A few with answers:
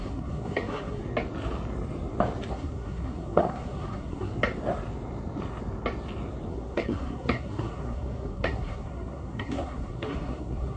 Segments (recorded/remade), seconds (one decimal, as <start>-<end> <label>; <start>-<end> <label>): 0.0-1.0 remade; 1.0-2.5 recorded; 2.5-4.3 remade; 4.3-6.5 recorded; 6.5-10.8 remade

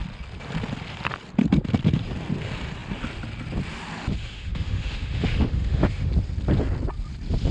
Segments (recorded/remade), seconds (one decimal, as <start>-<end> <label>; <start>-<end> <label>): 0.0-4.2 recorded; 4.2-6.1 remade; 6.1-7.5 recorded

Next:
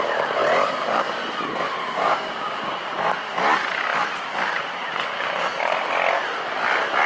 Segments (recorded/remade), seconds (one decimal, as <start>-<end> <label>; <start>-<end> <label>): 0.0-1.8 recorded; 1.8-2.9 remade; 2.9-7.1 recorded